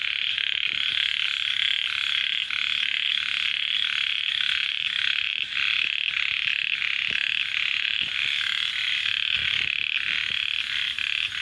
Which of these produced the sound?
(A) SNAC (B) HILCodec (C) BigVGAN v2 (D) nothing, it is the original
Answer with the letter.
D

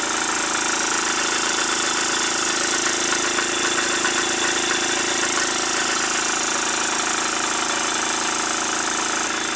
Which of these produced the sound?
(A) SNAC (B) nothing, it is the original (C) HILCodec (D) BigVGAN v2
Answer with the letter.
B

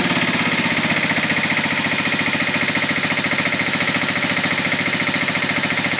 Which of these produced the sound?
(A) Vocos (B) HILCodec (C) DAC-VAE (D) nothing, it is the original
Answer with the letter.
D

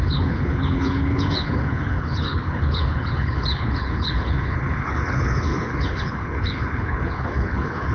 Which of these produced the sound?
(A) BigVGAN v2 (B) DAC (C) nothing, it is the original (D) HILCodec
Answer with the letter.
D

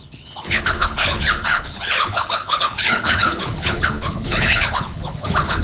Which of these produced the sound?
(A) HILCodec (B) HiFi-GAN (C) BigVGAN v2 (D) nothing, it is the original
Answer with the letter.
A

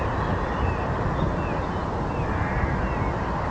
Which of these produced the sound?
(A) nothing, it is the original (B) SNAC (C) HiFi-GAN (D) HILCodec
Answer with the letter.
A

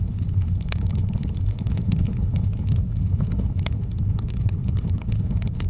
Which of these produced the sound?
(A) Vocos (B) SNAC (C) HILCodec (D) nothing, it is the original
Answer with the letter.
C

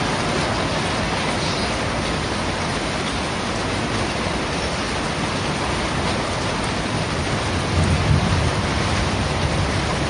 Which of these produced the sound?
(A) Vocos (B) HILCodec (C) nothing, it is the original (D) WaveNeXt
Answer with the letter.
C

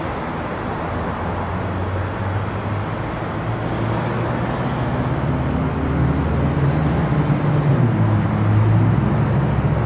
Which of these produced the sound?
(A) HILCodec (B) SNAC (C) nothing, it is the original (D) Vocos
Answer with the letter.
C